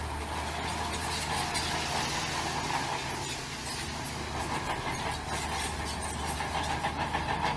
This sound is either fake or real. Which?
real